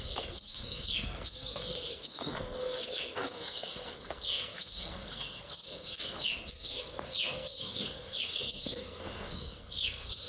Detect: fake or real fake